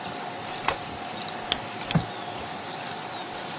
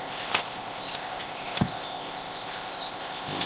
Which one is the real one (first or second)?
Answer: first